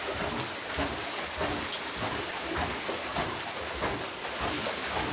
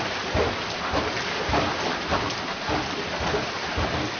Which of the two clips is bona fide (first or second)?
first